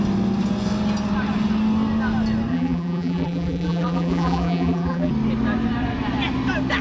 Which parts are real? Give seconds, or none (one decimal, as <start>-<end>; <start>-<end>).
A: 0.0-2.5; 5.1-6.8